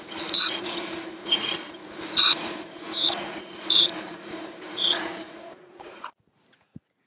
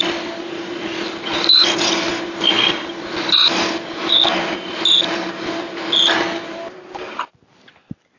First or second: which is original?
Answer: second